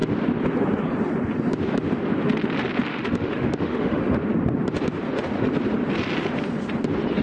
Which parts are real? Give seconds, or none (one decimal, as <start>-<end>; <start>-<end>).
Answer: 0.0-2.9; 4.0-7.2